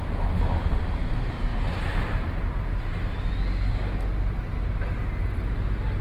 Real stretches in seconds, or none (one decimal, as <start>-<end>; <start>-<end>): 0.0-6.0